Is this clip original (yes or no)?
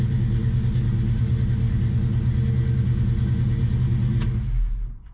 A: yes